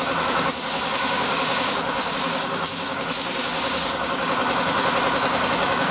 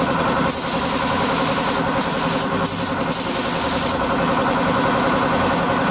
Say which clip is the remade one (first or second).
first